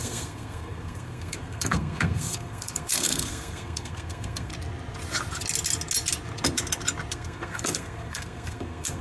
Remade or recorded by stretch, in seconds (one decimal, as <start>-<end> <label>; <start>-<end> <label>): 0.0-4.5 remade; 4.5-7.1 recorded; 7.1-9.0 remade